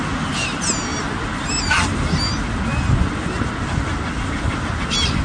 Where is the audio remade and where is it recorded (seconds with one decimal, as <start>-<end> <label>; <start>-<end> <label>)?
0.0-5.2 recorded